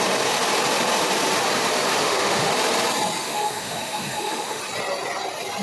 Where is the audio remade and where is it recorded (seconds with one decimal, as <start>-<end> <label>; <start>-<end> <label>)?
0.0-2.0 recorded; 2.0-2.5 remade; 2.5-3.2 recorded; 3.2-4.6 remade; 4.6-5.6 recorded